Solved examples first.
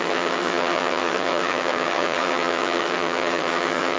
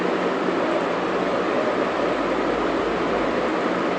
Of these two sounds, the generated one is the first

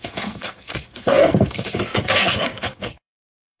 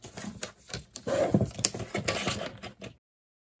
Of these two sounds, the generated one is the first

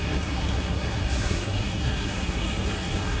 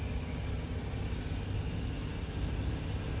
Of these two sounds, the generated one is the first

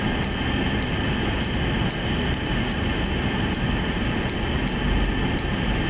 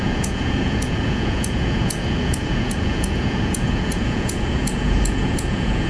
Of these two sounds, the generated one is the second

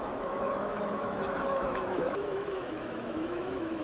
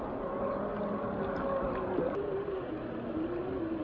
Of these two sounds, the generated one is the first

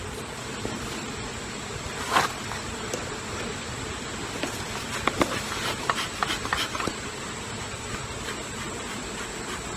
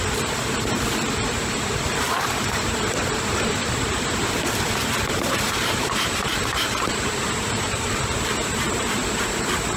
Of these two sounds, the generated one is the second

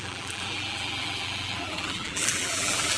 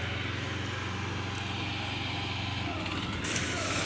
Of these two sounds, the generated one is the first